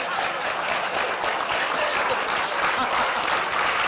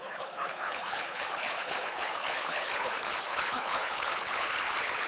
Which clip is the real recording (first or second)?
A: first